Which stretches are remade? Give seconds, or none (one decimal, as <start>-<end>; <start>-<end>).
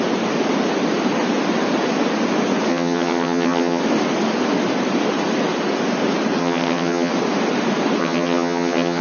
2.7-3.8; 6.4-7.1; 8.0-9.0